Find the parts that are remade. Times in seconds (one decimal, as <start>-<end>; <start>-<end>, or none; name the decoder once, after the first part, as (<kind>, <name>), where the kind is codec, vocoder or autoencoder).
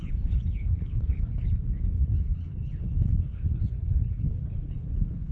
0.0-5.3 (codec, HILCodec)